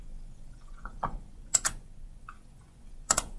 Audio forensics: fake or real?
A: fake